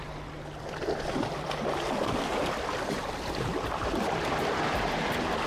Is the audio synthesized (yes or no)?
no